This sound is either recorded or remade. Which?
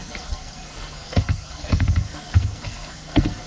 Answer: remade